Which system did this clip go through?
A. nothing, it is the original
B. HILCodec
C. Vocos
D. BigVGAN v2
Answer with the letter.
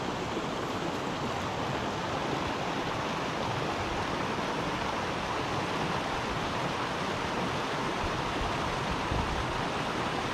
A